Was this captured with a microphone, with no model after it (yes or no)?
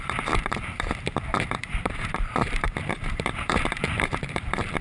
no